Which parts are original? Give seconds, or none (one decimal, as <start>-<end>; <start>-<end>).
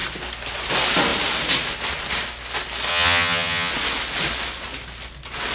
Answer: 0.0-2.9; 3.7-5.5